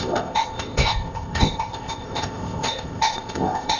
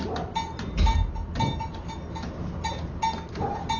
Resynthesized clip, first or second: first